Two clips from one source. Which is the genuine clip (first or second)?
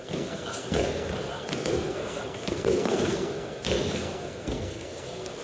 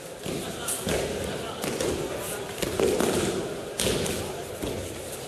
second